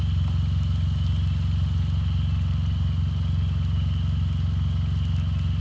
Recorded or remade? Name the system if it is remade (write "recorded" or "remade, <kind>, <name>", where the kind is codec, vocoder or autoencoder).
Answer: recorded